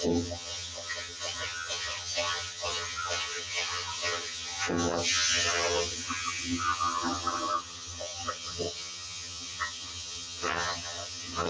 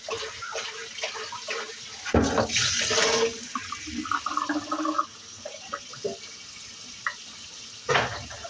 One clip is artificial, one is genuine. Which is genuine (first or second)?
second